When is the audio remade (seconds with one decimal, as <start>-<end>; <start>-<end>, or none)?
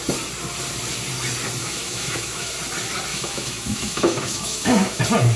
1.6-2.5; 3.1-5.0